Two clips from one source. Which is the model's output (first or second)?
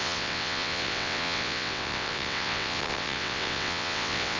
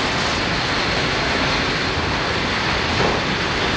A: first